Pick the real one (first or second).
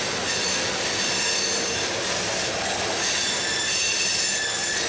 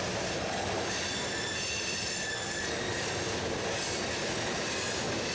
first